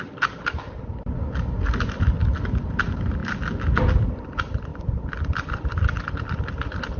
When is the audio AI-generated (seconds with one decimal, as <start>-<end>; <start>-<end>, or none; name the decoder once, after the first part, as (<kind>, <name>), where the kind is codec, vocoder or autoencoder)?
4.7-5.8 (vocoder, BigVGAN v2)